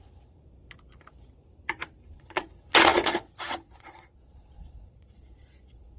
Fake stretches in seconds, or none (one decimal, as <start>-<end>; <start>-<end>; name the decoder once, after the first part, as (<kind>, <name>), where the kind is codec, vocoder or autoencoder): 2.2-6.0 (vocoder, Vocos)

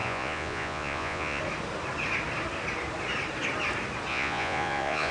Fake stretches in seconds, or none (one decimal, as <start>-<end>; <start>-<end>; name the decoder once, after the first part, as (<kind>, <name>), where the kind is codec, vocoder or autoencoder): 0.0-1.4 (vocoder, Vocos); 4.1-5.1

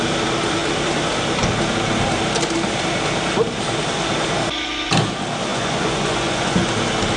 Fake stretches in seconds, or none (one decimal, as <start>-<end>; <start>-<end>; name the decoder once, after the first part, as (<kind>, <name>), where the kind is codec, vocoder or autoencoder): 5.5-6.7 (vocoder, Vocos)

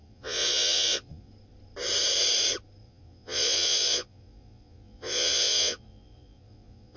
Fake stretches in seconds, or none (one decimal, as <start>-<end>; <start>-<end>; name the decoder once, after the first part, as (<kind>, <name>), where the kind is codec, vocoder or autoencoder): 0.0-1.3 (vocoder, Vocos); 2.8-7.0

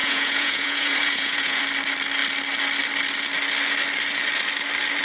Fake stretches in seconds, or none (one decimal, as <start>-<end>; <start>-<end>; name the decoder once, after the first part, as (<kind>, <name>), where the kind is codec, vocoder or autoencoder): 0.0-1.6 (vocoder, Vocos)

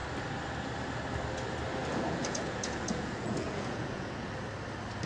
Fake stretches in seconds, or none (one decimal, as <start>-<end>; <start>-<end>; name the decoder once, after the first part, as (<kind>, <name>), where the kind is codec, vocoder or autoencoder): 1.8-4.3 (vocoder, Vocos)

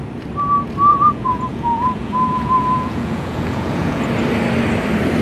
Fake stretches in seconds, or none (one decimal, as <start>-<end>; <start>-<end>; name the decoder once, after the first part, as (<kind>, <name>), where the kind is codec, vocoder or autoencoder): 0.9-4.0 (vocoder, Vocos)